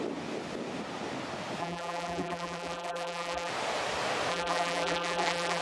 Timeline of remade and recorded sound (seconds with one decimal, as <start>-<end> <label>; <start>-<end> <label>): 0.0-1.6 recorded; 1.6-3.5 remade; 3.5-4.3 recorded; 4.3-5.6 remade